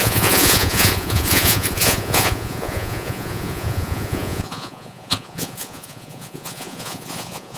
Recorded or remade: remade